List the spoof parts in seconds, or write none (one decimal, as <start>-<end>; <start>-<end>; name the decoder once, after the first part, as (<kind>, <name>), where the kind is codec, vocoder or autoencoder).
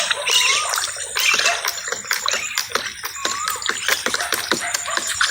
none